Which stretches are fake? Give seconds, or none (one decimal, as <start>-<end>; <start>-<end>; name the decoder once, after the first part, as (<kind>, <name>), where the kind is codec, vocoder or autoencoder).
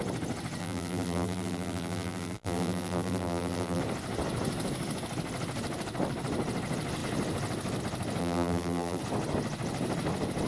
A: 0.6-3.8 (vocoder, BigVGAN v2); 8.2-9.0